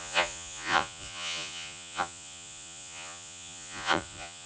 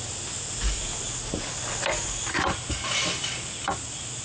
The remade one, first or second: first